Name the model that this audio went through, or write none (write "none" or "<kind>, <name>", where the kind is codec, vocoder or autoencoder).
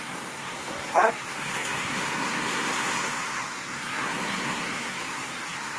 codec, SNAC